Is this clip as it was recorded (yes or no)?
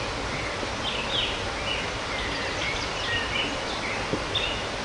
yes